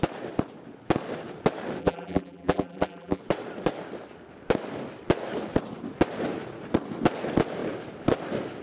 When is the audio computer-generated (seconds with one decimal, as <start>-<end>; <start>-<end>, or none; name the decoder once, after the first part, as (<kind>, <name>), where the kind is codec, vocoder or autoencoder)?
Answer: 1.8-3.2 (vocoder, BigVGAN v2)